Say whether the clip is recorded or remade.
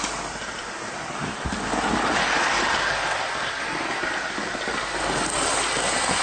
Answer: recorded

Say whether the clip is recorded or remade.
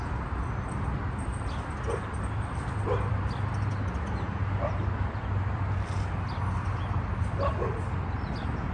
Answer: recorded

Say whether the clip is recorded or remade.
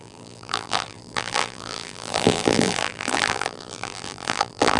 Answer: remade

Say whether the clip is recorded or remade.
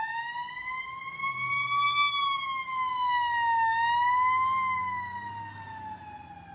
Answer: recorded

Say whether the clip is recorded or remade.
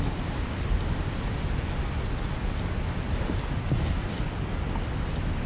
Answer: recorded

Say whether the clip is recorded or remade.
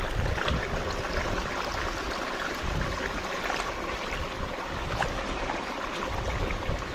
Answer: recorded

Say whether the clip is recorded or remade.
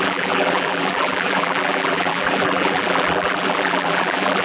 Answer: remade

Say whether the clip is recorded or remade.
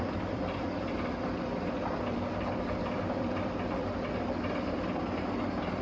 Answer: remade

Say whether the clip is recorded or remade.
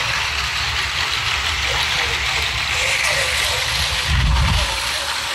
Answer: recorded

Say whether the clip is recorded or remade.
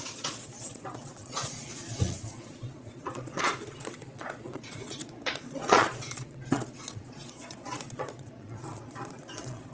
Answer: remade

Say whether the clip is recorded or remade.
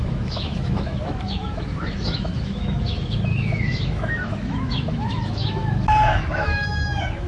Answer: remade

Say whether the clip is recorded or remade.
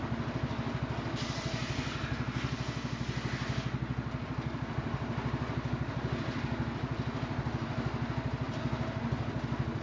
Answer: recorded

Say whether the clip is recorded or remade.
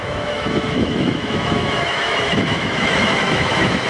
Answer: remade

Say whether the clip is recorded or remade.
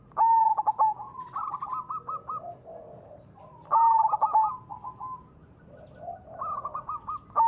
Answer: recorded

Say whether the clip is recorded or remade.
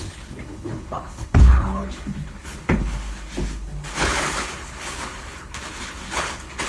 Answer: remade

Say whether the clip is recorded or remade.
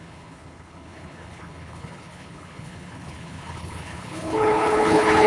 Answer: remade